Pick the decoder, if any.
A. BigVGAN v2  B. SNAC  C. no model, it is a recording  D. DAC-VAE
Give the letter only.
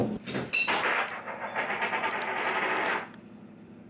C